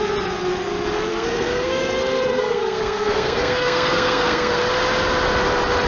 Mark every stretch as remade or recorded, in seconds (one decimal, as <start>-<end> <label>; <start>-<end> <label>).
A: 0.0-1.1 recorded; 1.1-4.6 remade; 4.6-5.9 recorded